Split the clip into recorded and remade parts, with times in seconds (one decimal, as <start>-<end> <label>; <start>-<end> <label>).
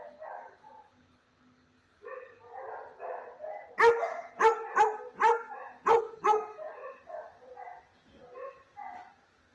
0.0-2.5 remade; 2.5-6.0 recorded; 6.0-6.8 remade; 6.8-9.5 recorded